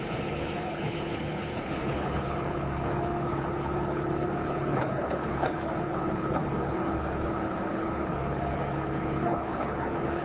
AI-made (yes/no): yes